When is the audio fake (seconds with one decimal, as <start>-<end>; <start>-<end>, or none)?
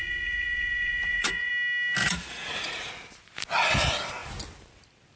0.0-1.5; 2.0-2.9